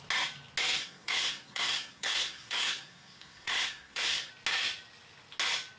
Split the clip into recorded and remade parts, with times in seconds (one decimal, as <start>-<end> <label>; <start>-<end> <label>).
0.0-0.8 recorded; 0.8-4.3 remade; 4.3-5.8 recorded